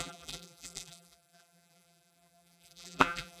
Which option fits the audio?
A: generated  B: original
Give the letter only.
A